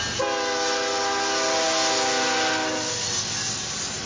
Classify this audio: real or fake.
real